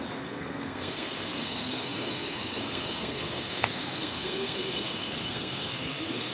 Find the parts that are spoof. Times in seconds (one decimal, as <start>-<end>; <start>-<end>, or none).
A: 0.0-6.3